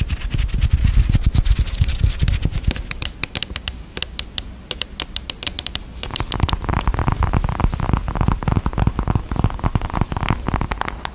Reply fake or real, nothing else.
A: real